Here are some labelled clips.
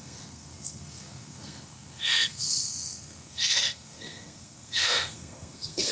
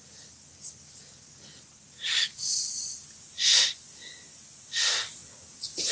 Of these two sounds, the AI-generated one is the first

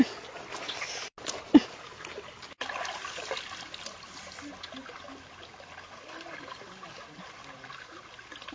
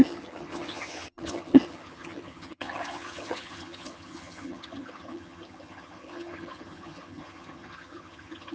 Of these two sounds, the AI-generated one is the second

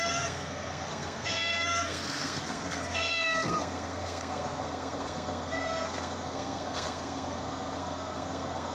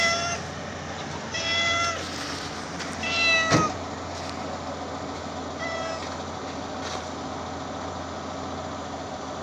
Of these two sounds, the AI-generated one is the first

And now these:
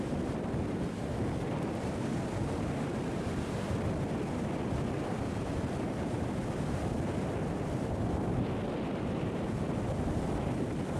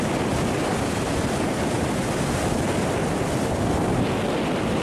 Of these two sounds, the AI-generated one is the first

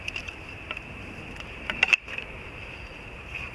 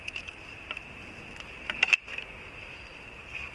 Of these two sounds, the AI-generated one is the first